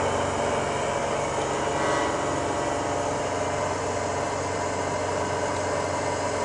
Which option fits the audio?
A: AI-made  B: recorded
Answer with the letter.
B